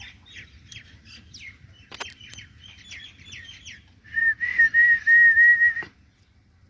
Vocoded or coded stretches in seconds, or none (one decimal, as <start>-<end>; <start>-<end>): none